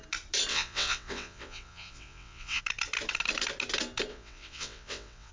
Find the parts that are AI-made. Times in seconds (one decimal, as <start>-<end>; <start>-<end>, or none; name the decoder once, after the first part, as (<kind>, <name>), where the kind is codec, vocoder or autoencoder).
0.5-2.6 (vocoder, WaveNeXt); 4.1-5.3